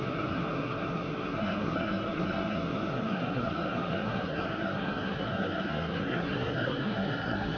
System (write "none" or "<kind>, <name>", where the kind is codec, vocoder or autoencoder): codec, SNAC